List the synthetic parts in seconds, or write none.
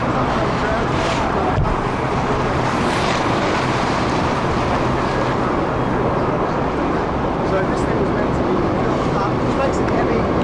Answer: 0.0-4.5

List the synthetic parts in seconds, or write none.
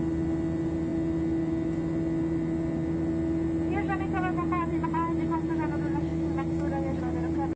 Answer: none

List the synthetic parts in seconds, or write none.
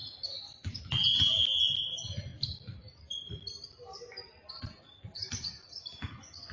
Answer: none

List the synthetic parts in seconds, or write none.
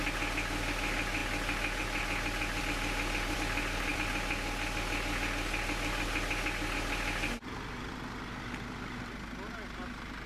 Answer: none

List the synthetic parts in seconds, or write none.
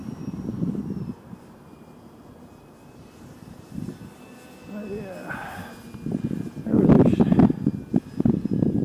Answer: 0.8-3.9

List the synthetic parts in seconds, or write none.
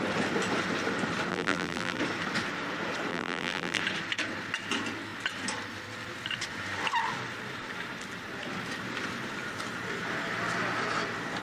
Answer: 1.3-2.0; 3.1-3.8